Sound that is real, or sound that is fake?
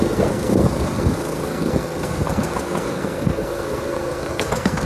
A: fake